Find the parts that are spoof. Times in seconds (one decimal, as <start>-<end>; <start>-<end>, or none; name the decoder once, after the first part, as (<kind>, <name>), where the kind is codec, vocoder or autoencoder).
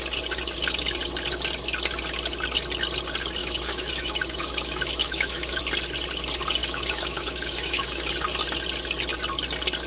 3.4-5.6 (autoencoder, DAC-VAE); 6.6-8.1